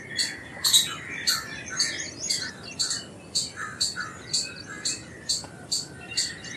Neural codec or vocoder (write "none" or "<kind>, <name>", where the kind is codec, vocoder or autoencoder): none